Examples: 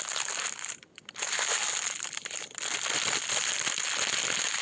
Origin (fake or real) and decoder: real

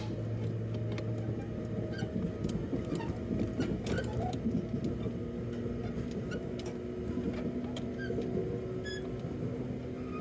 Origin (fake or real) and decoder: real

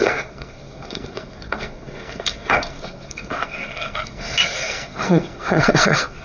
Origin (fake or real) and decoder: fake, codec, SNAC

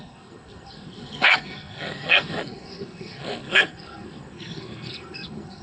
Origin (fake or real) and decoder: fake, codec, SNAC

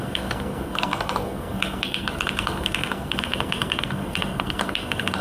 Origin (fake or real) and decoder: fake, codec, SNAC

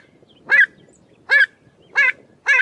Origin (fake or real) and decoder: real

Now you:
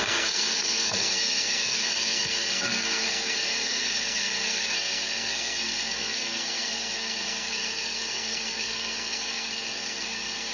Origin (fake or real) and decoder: fake, codec, SNAC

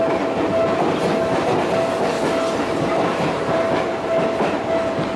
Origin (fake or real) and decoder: real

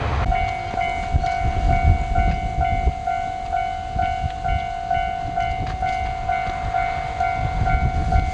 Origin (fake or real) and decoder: real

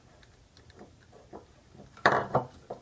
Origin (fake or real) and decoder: real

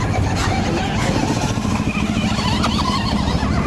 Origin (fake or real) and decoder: real